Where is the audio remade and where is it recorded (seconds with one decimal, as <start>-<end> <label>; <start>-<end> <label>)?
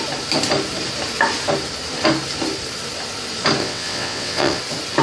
0.0-3.6 recorded; 3.6-4.6 remade; 4.6-5.0 recorded